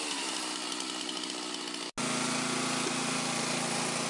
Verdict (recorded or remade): recorded